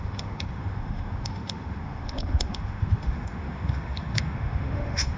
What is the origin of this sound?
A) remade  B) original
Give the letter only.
A